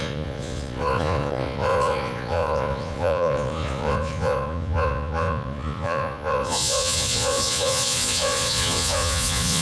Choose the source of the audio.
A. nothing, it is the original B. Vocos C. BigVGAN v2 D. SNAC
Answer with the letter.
B